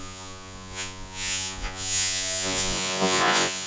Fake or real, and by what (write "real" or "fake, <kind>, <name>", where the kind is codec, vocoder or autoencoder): fake, vocoder, Vocos